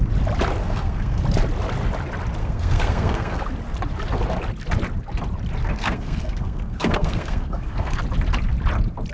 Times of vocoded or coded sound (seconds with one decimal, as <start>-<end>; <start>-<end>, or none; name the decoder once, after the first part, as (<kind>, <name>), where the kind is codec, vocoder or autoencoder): 0.6-1.2 (codec, SNAC); 2.4-3.4; 5.6-8.0